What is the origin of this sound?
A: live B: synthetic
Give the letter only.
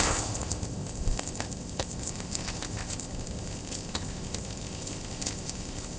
B